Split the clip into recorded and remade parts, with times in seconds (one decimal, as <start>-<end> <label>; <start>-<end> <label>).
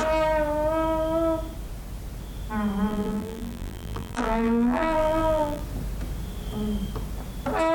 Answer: 0.0-2.9 recorded; 2.9-5.6 remade; 5.6-7.7 recorded